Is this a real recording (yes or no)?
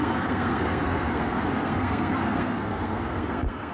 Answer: no